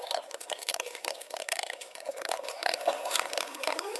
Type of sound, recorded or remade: remade